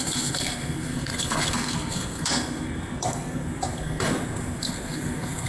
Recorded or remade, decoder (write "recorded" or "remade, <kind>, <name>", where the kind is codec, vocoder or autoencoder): remade, codec, SNAC